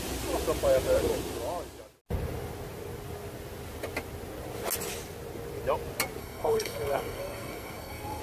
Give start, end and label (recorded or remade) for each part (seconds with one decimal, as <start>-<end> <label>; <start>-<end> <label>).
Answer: 0.0-6.2 recorded; 6.2-8.2 remade